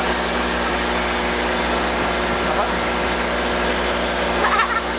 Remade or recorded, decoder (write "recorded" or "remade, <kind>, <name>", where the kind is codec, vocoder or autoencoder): recorded